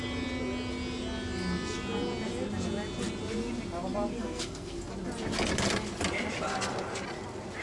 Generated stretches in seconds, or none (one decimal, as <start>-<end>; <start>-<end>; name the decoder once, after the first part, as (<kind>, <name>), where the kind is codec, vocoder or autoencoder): 4.1-4.9 (codec, SNAC)